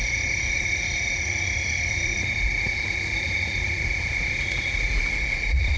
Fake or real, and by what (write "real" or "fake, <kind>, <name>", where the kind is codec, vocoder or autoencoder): fake, vocoder, Vocos